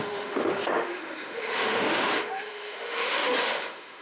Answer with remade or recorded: remade